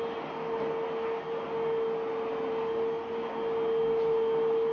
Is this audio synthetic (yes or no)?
no